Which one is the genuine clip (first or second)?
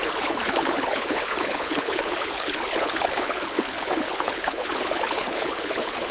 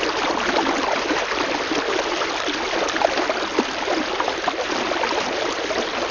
second